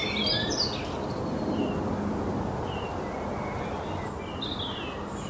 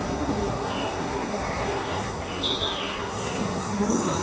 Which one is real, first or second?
first